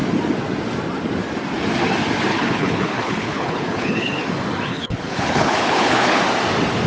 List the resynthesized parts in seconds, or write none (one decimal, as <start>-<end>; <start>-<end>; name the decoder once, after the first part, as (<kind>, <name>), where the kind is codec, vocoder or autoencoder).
2.3-4.2 (codec, HILCodec); 4.7-6.2